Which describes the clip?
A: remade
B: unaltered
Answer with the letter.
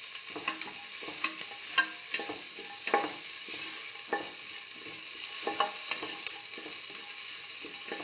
B